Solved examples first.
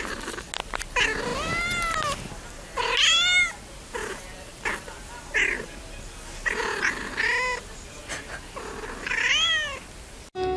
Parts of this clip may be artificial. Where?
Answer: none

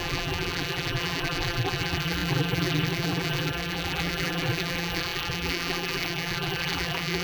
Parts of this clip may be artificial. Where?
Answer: 0.0-7.2 (vocoder, BigVGAN v2)

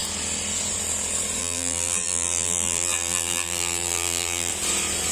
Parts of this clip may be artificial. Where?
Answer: 1.4-4.5 (vocoder, BigVGAN v2)

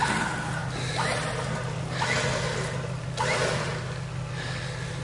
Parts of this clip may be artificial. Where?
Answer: none

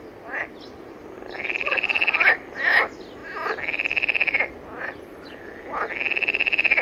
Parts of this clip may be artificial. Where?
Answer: none